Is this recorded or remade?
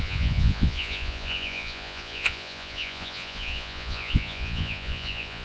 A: remade